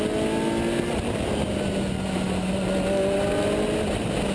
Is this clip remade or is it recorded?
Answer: recorded